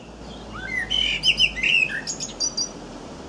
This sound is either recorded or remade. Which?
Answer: recorded